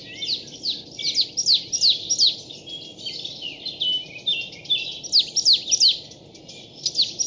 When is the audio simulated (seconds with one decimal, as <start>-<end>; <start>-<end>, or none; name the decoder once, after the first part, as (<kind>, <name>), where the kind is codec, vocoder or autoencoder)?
none